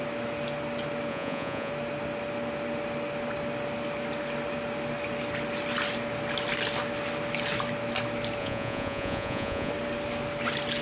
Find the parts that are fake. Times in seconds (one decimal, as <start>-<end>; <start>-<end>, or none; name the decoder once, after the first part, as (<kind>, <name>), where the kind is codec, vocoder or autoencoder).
1.1-1.7 (vocoder, Vocos); 8.4-9.7

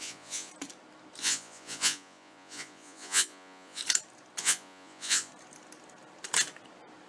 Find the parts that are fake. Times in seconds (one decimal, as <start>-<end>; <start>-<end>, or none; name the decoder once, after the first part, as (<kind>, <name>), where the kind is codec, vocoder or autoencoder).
0.0-0.5 (vocoder, Vocos); 1.2-3.8; 4.4-5.3

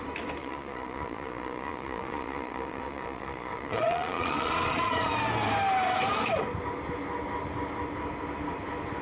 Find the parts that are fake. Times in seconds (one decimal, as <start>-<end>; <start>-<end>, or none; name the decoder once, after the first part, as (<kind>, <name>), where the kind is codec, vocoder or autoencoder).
0.4-5.1 (vocoder, Vocos)

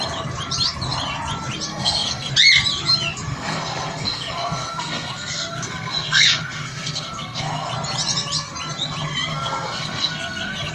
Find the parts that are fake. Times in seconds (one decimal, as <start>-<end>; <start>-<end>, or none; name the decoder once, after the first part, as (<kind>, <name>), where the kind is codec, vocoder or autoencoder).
1.7-2.3 (codec, SNAC); 3.3-7.7; 9.3-10.7

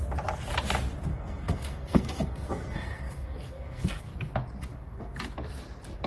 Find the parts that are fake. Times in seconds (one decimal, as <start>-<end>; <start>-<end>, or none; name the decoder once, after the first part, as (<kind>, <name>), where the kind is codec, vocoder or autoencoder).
1.1-4.1 (codec, SNAC); 4.7-5.2

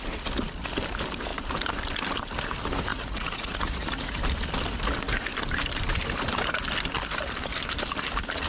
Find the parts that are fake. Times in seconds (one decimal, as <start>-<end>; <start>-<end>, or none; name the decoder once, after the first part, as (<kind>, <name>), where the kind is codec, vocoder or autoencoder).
2.9-4.2 (vocoder, Vocos)